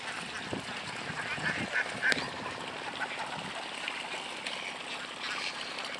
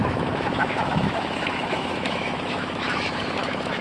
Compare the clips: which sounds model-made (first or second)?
second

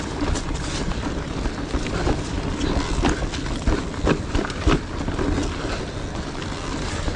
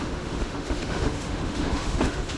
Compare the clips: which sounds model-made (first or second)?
second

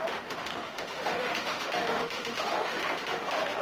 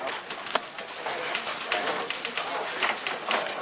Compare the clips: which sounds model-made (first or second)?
first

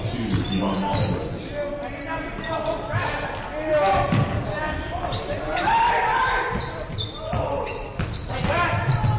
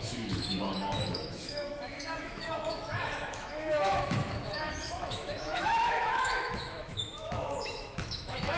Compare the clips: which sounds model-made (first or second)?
second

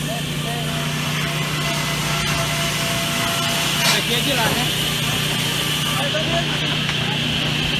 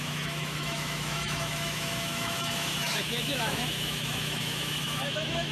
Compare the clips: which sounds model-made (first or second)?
second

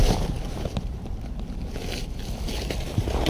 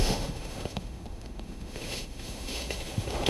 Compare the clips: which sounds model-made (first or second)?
second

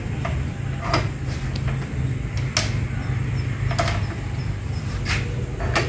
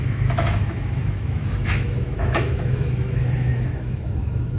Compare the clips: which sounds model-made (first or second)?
second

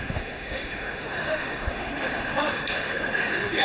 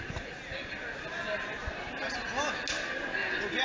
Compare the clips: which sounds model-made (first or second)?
first